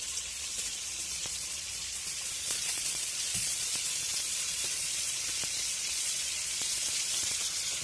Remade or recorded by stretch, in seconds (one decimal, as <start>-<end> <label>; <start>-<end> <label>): 0.0-7.8 remade